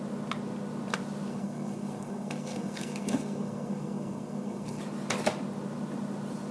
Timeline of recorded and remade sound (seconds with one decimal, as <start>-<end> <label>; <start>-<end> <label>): 0.0-1.3 recorded; 1.3-4.8 remade; 4.8-6.5 recorded